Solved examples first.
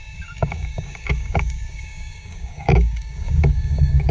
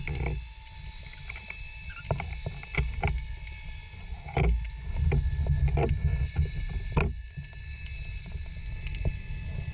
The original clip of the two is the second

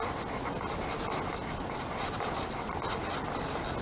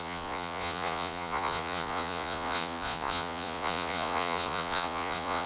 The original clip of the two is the first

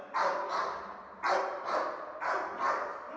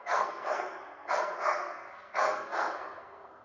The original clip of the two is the first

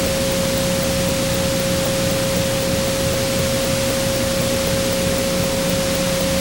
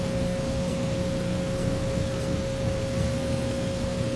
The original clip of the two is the first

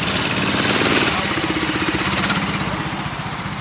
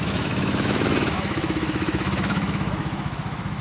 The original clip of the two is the first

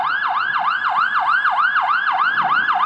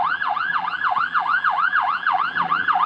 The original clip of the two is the first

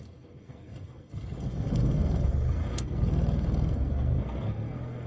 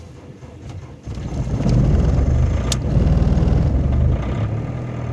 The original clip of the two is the second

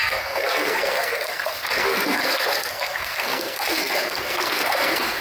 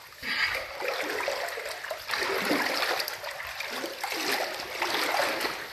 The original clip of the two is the second